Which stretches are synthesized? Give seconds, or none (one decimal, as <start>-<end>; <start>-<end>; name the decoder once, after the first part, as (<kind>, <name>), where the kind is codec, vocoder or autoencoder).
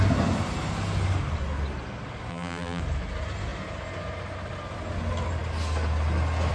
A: 2.3-2.8 (vocoder, BigVGAN v2)